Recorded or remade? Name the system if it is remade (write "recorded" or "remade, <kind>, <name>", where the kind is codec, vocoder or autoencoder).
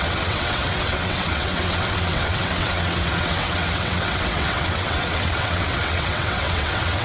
remade, vocoder, WaveNeXt